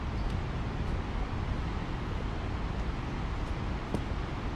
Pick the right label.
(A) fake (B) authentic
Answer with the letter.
B